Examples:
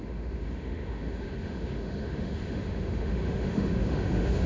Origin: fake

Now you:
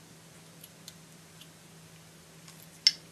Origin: real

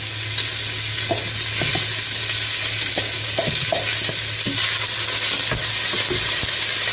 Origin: real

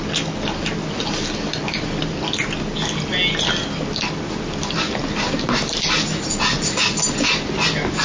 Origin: real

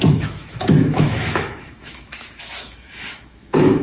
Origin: fake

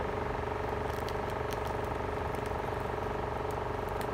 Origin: real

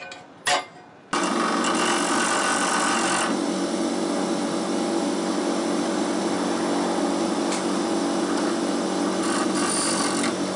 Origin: real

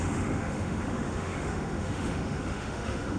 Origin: fake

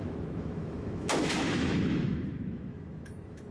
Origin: fake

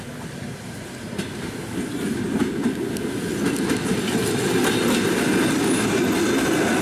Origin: real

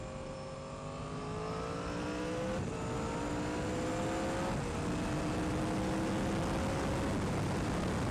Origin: real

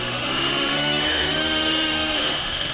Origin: fake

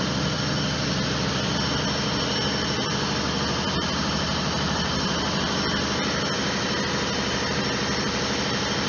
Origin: real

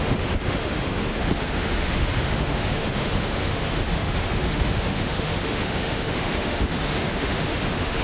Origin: fake